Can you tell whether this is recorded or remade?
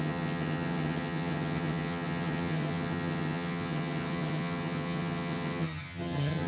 remade